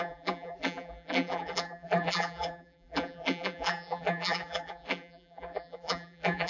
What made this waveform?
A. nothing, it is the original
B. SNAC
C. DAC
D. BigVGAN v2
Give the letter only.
D